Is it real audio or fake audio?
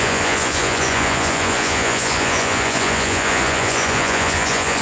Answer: fake